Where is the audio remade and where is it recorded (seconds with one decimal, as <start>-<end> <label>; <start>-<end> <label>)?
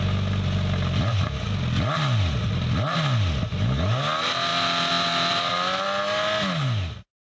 0.0-7.3 recorded